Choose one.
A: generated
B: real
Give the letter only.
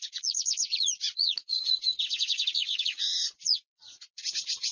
A